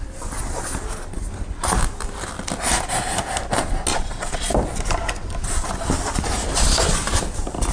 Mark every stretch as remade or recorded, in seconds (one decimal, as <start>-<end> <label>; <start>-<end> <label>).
0.0-3.9 recorded; 3.9-4.5 remade; 4.5-7.7 recorded